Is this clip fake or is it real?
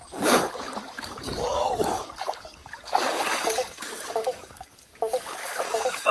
fake